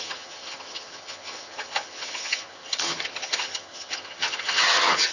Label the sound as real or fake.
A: fake